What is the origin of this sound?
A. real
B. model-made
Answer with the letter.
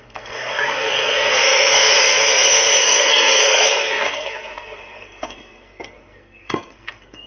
B